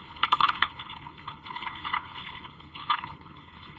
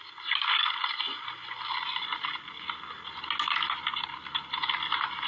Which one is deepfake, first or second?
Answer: first